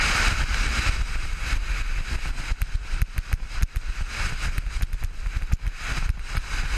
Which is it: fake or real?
real